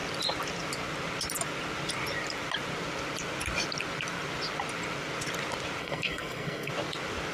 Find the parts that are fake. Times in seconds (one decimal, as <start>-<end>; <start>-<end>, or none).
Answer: 5.8-6.7